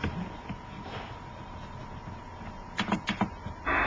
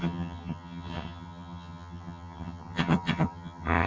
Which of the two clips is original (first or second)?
first